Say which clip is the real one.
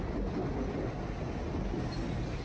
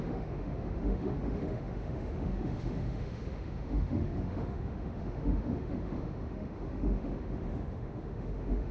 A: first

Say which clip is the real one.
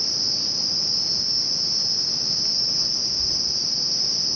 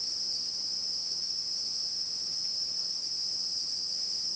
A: first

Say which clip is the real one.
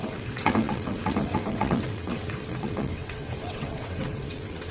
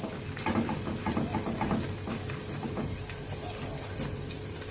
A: second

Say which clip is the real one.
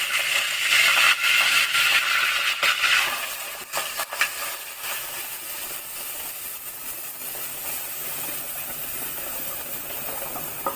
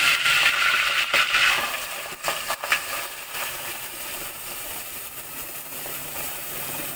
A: first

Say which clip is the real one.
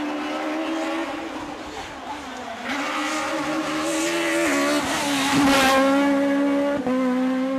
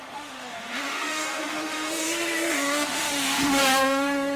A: first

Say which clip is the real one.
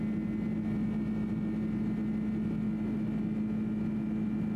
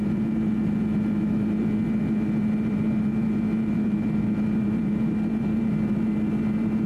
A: first